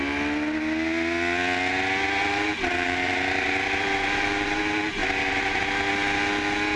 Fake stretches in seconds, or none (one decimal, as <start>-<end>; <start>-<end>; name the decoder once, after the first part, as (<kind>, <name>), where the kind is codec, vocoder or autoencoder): 2.2-4.6 (vocoder, BigVGAN v2); 5.0-5.6

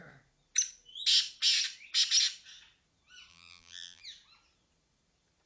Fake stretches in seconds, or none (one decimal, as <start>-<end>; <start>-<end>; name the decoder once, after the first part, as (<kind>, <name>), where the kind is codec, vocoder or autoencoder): 3.3-4.0 (vocoder, BigVGAN v2)

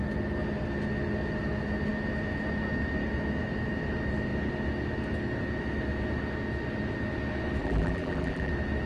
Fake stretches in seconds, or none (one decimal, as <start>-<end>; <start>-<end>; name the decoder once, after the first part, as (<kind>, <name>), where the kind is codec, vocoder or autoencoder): 7.6-8.5 (vocoder, BigVGAN v2)